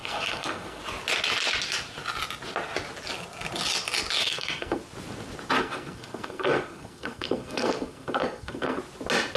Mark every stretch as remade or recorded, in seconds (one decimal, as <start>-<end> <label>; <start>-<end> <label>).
0.0-0.8 remade; 0.8-4.2 recorded; 4.2-4.8 remade; 4.8-5.6 recorded; 5.6-8.8 remade; 8.8-9.4 recorded